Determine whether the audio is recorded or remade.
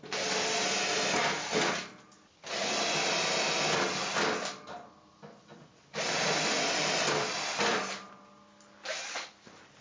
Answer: recorded